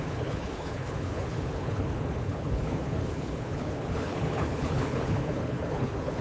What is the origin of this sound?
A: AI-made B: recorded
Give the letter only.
A